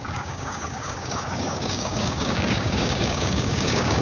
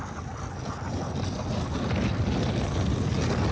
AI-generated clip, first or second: first